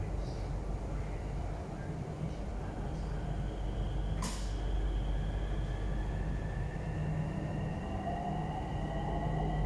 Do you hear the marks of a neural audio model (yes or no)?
no